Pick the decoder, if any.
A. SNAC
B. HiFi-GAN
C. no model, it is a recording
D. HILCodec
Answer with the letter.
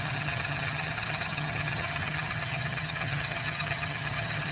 B